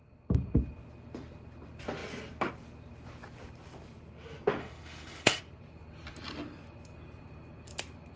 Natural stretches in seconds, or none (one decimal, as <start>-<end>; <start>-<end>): 0.0-4.6; 5.4-8.2